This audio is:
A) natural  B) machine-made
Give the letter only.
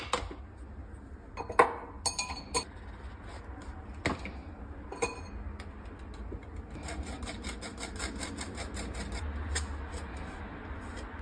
A